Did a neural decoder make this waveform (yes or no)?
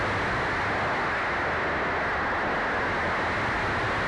no